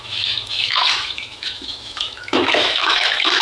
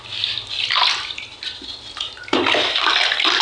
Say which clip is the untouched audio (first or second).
second